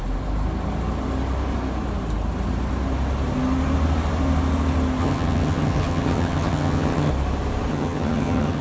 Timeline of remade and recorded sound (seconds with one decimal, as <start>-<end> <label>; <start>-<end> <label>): 0.0-5.0 recorded; 5.0-7.1 remade; 7.1-7.7 recorded; 7.7-8.6 remade